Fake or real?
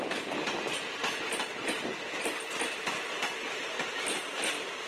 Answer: real